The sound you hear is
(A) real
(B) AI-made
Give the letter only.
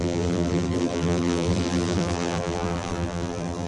B